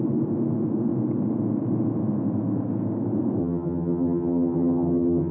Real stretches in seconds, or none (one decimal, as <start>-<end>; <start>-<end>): 0.0-3.4